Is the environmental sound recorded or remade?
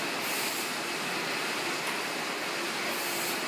recorded